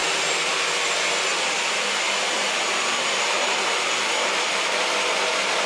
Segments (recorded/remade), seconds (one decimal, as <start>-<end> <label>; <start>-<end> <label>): 0.0-0.5 remade; 0.5-1.3 recorded; 1.3-4.7 remade; 4.7-5.7 recorded